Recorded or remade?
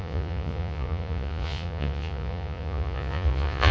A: remade